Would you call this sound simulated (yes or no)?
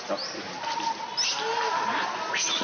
no